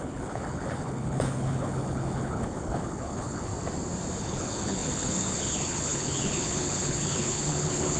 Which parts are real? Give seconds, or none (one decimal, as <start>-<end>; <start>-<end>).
3.5-4.2